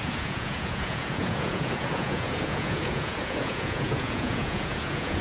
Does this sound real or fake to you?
fake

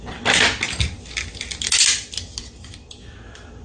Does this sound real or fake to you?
real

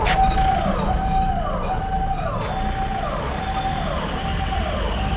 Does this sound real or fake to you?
real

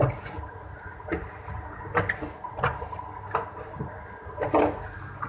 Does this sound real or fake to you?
real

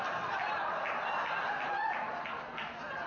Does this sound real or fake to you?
real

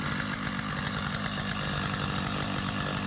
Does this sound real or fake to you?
real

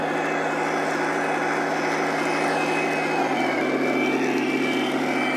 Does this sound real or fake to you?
real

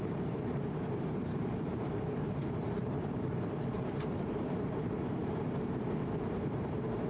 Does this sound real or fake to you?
fake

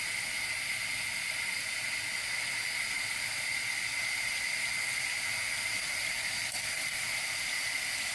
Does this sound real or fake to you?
real